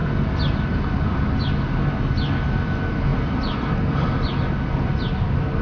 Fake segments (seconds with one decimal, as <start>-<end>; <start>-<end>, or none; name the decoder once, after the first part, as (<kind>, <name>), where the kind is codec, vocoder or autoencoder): none